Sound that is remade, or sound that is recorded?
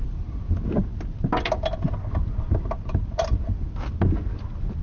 recorded